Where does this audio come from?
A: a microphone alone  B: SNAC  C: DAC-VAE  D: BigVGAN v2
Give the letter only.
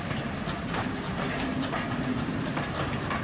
D